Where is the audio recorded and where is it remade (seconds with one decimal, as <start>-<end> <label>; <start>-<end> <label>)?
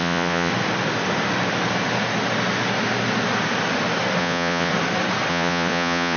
0.0-0.5 remade; 0.5-4.2 recorded; 4.2-4.7 remade; 4.7-5.3 recorded; 5.3-6.2 remade